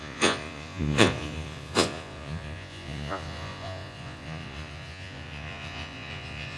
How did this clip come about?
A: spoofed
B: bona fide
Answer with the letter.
A